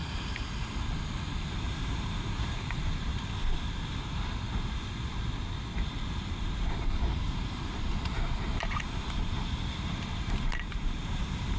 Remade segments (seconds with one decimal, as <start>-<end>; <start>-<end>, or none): 1.8-3.1; 5.8-11.6